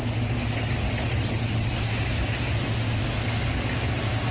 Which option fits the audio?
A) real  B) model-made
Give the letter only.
A